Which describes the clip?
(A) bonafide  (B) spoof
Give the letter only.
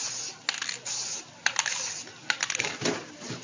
A